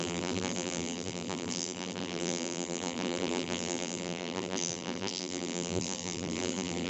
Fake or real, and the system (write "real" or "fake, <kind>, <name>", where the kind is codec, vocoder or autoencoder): fake, vocoder, BigVGAN v2